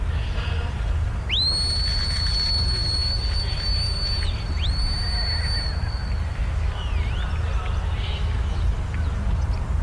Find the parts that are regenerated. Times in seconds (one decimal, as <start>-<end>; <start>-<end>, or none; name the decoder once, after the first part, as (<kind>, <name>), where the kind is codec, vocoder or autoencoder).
none